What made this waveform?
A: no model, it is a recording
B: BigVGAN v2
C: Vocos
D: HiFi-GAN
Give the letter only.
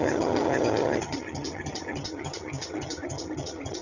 D